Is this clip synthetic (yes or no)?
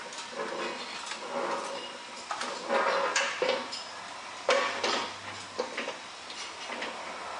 no